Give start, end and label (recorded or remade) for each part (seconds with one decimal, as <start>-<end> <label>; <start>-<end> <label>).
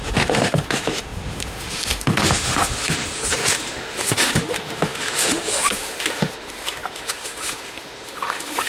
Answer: 0.0-8.7 remade